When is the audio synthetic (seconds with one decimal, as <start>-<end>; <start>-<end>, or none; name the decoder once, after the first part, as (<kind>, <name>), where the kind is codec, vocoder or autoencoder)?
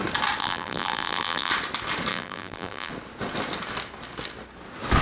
0.4-1.5 (vocoder, BigVGAN v2); 2.1-2.9